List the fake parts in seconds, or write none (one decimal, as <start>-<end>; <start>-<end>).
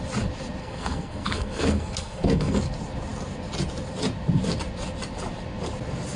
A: 0.6-2.6